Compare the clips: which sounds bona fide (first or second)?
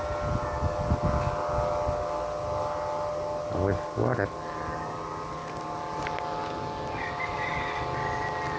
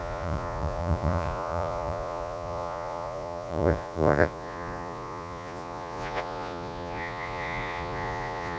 first